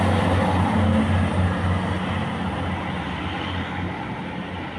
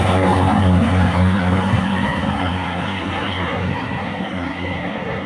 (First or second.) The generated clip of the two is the second